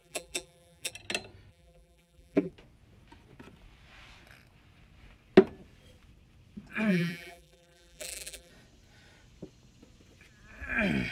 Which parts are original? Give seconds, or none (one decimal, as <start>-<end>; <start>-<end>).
0.9-1.5; 2.5-6.9; 8.5-11.1